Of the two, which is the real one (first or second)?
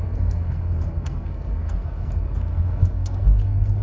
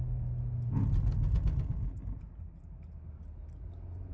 second